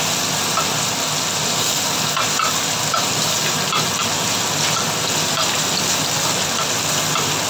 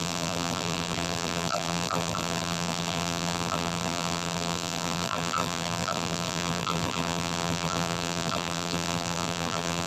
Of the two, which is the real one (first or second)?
first